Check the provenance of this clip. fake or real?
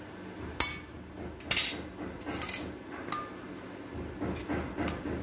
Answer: real